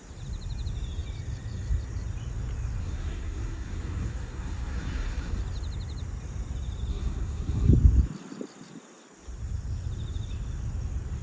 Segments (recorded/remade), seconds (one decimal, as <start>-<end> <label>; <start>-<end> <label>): 0.0-2.8 recorded; 2.8-5.4 remade; 5.4-6.9 recorded; 6.9-7.7 remade; 7.7-11.2 recorded